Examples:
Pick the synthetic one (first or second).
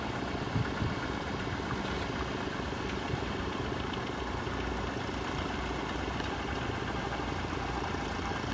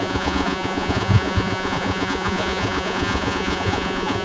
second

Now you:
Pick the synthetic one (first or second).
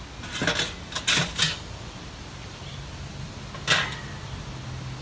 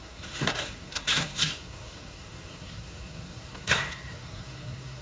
second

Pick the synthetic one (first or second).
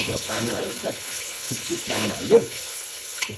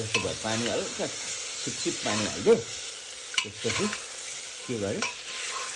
first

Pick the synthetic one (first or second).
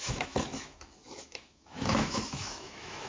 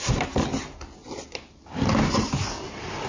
first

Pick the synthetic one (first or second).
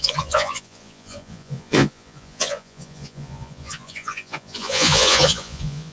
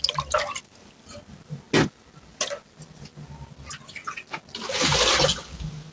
first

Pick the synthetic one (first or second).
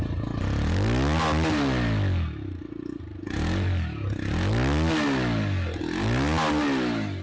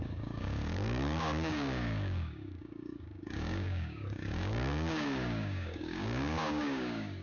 second